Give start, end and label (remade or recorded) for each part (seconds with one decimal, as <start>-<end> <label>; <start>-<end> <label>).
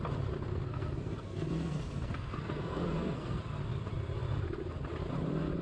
0.0-0.5 recorded; 0.5-3.4 remade; 3.4-5.6 recorded